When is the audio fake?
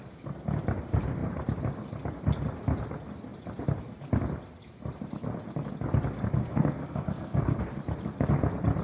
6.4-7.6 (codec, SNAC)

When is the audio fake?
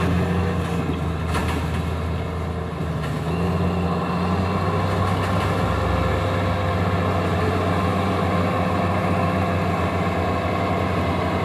none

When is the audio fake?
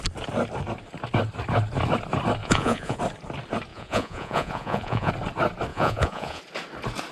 2.4-3.0 (vocoder, Vocos); 3.7-5.1; 5.7-6.4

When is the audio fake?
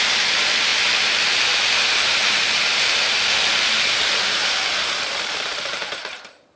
0.0-6.6 (vocoder, BigVGAN v2)